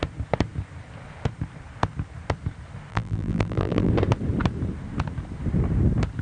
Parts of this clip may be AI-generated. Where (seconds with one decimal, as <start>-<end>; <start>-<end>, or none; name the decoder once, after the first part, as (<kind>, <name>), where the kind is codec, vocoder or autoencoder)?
2.9-3.9 (vocoder, BigVGAN v2)